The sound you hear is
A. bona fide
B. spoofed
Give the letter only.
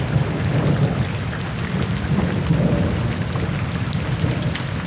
A